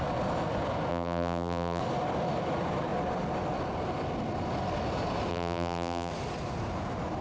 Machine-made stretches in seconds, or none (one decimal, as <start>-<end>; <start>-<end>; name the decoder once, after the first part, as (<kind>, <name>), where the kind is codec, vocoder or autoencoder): 0.9-1.8 (vocoder, BigVGAN v2); 5.3-6.1